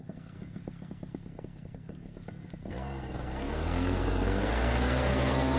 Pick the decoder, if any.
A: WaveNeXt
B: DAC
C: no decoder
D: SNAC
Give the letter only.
D